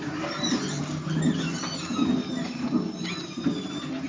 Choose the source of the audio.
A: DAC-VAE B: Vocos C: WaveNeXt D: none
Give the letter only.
D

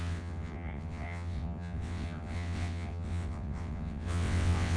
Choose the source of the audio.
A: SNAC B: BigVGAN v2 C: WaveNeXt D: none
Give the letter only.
C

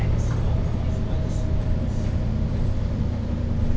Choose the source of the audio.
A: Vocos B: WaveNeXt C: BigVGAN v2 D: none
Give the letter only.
D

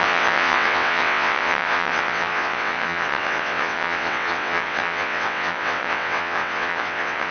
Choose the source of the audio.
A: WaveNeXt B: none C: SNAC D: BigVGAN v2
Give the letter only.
A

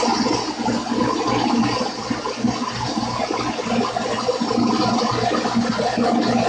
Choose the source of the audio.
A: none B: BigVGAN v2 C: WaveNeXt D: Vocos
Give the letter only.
A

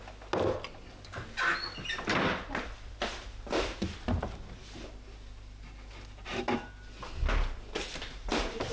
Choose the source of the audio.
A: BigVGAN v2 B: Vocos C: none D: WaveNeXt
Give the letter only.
C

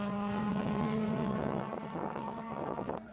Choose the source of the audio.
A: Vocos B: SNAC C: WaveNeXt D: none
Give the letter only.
C